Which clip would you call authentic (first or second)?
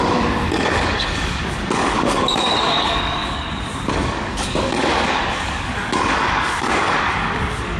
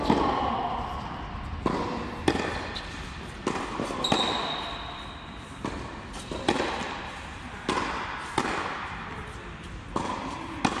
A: second